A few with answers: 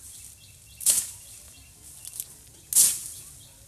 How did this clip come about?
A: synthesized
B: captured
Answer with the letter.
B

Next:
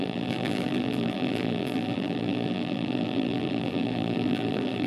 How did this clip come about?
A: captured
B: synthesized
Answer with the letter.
B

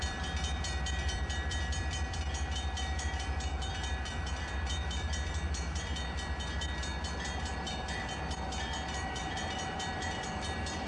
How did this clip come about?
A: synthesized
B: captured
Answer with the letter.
A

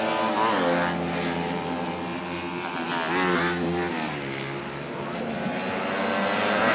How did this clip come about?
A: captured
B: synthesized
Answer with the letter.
A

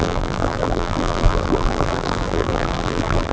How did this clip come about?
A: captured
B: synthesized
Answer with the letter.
B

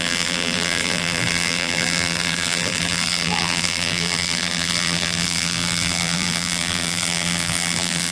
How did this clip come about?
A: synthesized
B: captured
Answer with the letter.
A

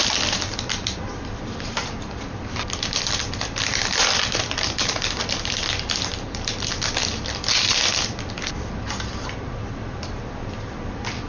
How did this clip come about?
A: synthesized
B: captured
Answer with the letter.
A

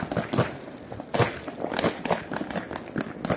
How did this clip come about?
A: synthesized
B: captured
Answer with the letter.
B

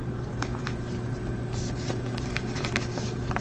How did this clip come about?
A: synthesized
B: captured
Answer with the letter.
A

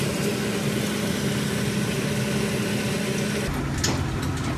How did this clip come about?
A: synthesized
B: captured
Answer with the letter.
B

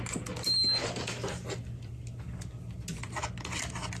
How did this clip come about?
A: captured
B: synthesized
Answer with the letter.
A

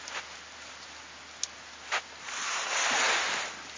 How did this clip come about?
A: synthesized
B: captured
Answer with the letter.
B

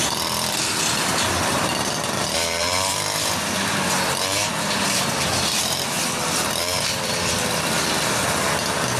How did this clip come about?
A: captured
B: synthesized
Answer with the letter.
B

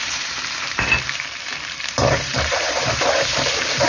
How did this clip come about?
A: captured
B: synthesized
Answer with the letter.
B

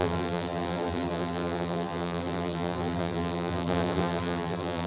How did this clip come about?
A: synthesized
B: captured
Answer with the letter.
A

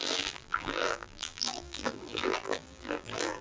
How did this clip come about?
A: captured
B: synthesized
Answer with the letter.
B